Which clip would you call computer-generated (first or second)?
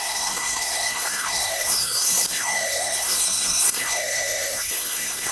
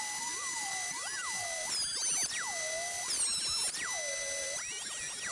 first